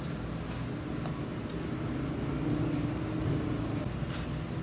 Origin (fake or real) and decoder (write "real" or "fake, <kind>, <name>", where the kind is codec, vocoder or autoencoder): real